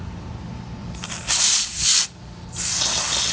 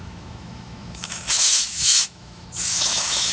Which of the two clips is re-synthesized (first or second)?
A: second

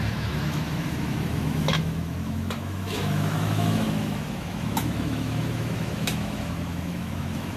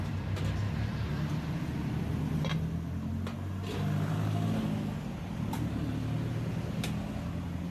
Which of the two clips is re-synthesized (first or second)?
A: first